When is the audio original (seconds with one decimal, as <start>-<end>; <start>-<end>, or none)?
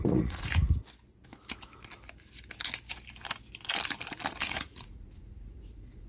0.6-4.3